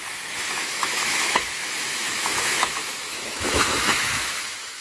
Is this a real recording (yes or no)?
no